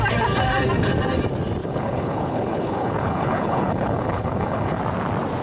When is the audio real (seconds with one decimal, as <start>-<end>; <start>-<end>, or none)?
0.0-1.6; 4.8-5.4